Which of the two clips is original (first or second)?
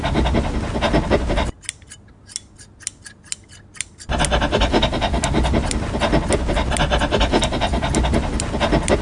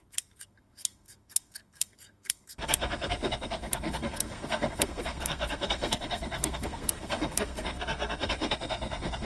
first